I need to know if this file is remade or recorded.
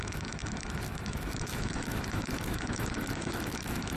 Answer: remade